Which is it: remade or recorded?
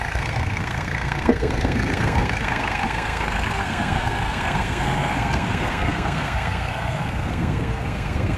remade